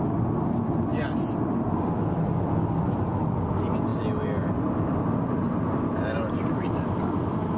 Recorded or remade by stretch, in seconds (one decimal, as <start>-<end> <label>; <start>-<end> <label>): 0.0-7.6 recorded